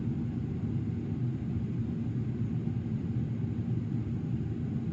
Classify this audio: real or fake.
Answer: real